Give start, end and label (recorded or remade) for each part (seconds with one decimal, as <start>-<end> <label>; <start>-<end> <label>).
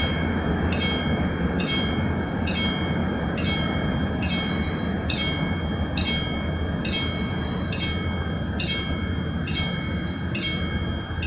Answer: 0.0-3.0 recorded; 3.0-4.1 remade; 4.1-11.3 recorded